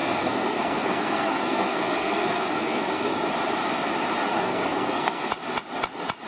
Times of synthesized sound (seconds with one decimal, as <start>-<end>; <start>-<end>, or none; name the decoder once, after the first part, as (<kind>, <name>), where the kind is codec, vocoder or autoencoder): 0.0-3.1 (codec, SNAC); 4.3-5.3